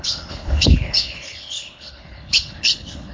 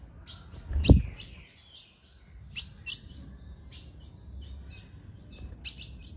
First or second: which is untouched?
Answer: second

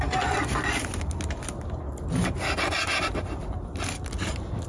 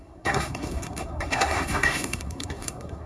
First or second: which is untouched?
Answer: first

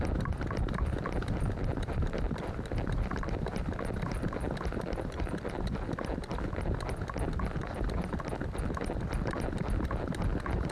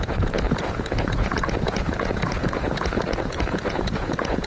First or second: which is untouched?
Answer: first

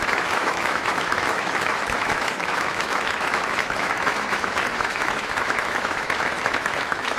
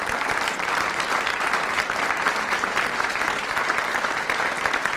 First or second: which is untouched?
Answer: second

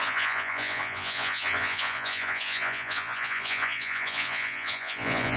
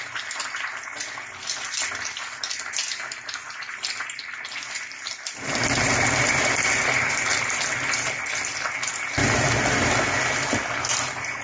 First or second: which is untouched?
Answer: second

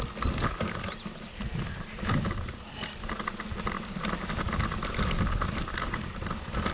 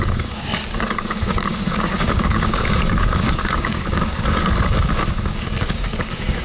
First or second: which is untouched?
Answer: first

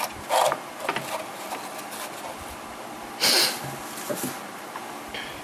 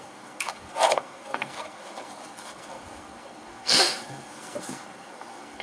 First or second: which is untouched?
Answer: first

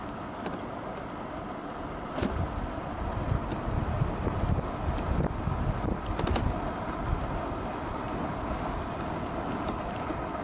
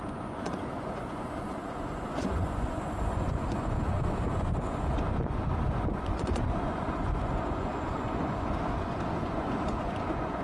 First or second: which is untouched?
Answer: first